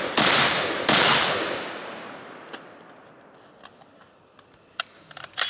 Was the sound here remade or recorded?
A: recorded